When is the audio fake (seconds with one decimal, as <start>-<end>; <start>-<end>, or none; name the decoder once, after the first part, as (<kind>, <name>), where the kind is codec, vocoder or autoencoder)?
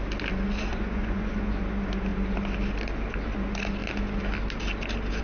0.7-1.6 (vocoder, Vocos)